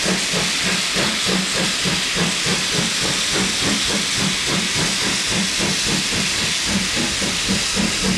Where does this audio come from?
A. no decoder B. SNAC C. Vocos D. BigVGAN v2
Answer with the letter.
A